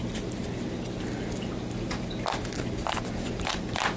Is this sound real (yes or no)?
yes